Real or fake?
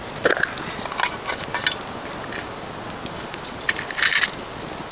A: real